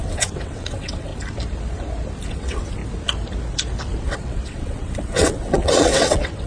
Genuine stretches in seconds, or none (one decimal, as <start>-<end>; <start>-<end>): 1.1-2.3; 2.8-4.0